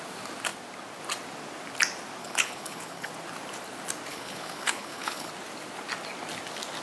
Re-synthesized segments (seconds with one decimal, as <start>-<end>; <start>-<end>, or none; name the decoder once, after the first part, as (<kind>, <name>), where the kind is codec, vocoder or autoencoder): 2.2-3.1 (codec, HILCodec); 4.1-5.3